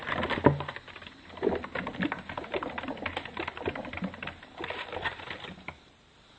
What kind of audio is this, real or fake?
real